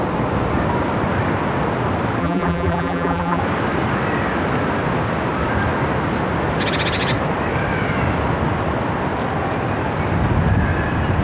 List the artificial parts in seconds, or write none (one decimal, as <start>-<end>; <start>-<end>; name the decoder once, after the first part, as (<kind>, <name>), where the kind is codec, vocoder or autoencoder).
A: 2.2-3.4 (vocoder, BigVGAN v2)